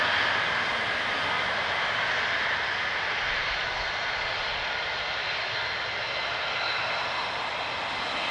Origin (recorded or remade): recorded